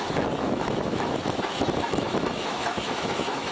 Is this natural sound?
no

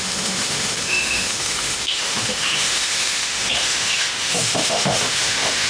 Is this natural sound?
no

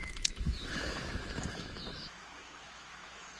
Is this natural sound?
no